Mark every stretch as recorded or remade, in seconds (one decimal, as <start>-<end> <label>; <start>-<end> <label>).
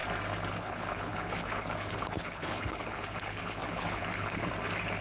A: 0.0-0.5 recorded; 0.5-4.4 remade; 4.4-5.0 recorded